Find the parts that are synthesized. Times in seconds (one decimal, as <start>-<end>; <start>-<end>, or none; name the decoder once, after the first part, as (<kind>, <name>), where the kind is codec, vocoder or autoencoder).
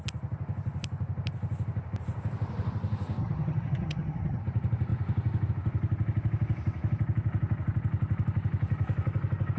3.2-4.4 (vocoder, HiFi-GAN)